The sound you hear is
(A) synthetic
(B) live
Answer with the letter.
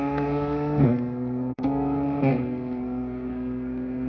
A